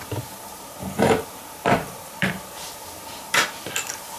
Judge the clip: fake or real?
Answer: fake